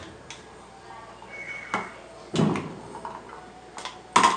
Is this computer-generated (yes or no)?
no